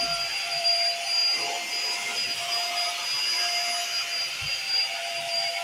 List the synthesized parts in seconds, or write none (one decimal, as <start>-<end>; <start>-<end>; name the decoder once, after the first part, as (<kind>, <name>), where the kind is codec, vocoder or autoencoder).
0.0-1.2 (vocoder, BigVGAN v2); 4.3-5.6